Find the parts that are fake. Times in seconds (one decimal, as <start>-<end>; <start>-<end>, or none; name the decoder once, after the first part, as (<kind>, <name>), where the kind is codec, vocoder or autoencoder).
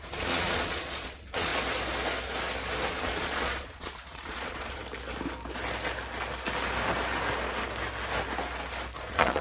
0.0-1.5 (vocoder, Vocos); 2.9-4.8; 9.0-9.4